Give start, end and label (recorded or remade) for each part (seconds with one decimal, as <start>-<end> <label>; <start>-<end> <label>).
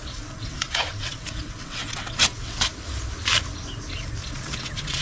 0.0-2.7 remade; 2.7-4.3 recorded; 4.3-5.0 remade